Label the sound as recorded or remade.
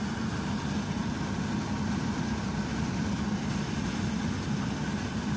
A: recorded